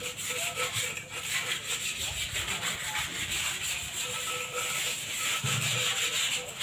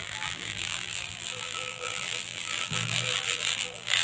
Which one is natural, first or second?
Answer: first